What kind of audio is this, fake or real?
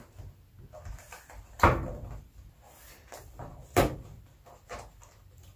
real